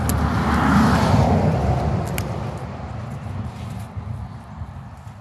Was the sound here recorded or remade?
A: recorded